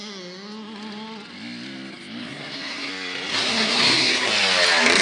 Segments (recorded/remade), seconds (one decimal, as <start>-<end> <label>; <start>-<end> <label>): 0.0-2.2 recorded; 2.2-2.9 remade; 2.9-3.3 recorded; 3.3-4.3 remade; 4.3-5.0 recorded